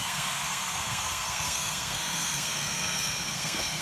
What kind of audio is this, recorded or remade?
remade